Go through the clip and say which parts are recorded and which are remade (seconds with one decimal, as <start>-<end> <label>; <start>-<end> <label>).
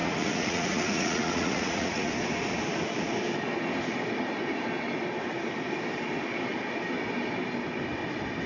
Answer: 0.0-2.1 remade; 2.1-8.5 recorded